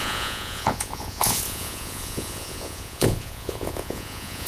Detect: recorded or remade remade